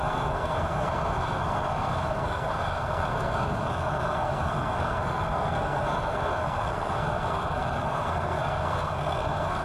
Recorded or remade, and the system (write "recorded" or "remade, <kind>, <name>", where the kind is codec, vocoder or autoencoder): remade, codec, SNAC